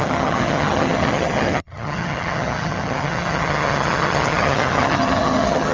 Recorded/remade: remade